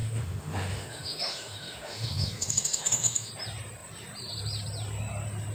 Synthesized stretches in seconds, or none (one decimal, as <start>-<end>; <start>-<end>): 0.0-3.3